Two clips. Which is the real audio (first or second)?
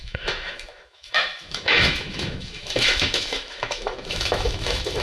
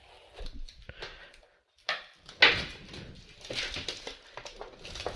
second